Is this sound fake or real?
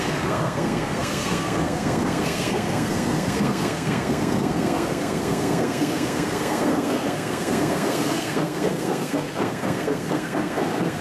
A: fake